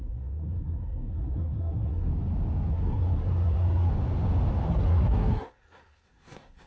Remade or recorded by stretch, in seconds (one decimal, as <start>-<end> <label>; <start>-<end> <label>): 0.0-2.1 remade; 2.1-2.7 recorded; 2.7-3.9 remade; 3.9-4.7 recorded; 4.7-6.7 remade